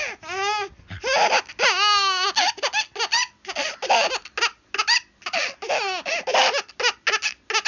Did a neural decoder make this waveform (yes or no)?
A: no